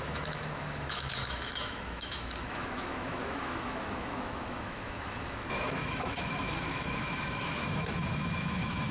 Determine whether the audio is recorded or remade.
remade